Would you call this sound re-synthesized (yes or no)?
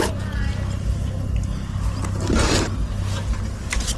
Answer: no